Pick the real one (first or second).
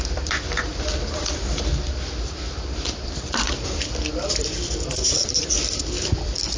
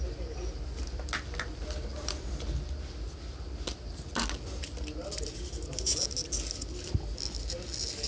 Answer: second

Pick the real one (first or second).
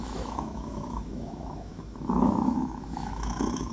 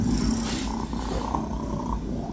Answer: second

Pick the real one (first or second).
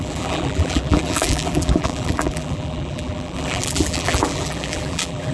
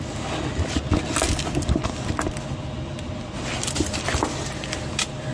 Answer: second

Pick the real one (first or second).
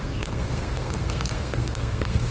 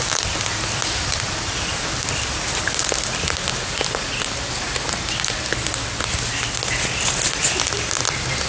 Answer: second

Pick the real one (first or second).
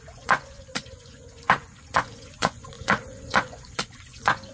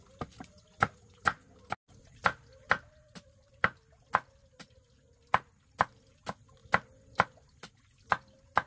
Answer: second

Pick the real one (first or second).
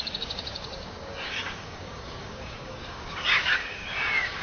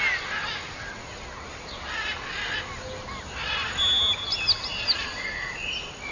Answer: second